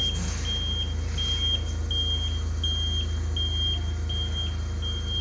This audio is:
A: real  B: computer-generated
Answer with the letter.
A